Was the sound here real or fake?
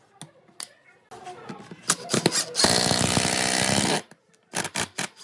real